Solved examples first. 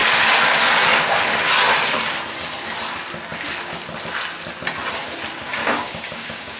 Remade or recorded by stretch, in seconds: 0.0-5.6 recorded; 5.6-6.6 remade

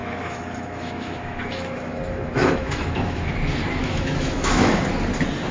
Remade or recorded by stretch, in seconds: 0.0-3.3 remade; 3.3-3.8 recorded; 3.8-4.8 remade; 4.8-5.5 recorded

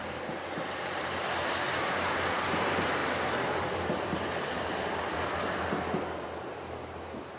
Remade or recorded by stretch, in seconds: 0.0-3.0 recorded; 3.0-5.7 remade; 5.7-7.4 recorded

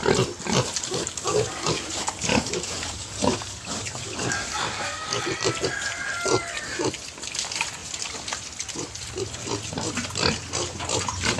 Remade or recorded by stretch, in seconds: 0.0-0.9 recorded; 0.9-5.2 remade; 5.2-11.4 recorded

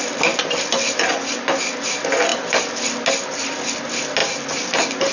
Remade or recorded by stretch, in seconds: 0.0-5.1 recorded

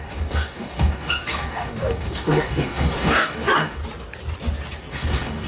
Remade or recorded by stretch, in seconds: 0.0-3.8 remade; 3.8-4.9 recorded; 4.9-5.5 remade

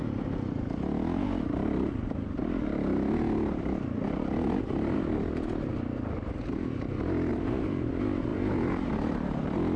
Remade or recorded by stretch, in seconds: 0.0-7.3 recorded; 7.3-7.9 remade; 7.9-8.3 recorded; 8.3-8.9 remade; 8.9-9.8 recorded

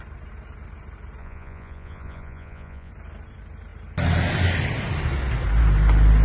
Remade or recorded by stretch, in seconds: 0.0-1.2 recorded; 1.2-2.9 remade; 2.9-6.2 recorded